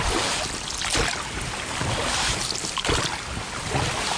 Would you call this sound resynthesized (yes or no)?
no